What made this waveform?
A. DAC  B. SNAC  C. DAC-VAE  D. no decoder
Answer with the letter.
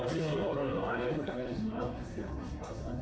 B